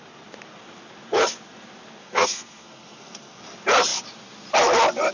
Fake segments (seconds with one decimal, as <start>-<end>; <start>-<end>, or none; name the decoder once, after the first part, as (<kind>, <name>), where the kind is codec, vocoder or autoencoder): 2.0-3.4 (codec, SNAC)

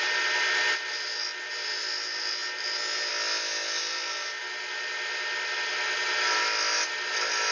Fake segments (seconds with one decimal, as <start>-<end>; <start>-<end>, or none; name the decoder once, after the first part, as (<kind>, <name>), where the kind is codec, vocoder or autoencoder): none

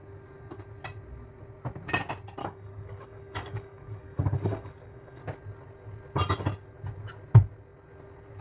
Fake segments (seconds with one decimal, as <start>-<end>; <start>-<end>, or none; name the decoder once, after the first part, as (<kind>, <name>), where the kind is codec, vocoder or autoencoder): 2.4-5.2 (codec, DAC)

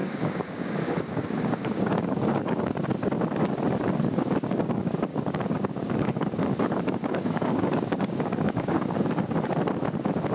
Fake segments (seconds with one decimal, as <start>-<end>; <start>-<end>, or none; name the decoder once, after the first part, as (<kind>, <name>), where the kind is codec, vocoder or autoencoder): 0.0-2.8 (codec, DAC); 5.1-9.1

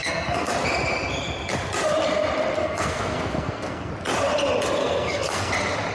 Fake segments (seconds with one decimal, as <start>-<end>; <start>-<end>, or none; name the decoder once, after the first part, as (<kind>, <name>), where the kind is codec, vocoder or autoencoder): 0.0-0.5 (codec, SNAC); 2.6-3.9; 4.8-5.5

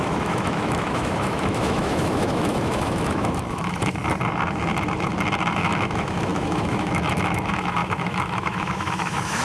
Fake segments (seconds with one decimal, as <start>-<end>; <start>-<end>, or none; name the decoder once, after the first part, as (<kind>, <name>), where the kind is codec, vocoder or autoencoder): 0.0-4.0 (autoencoder, DAC-VAE); 5.5-9.4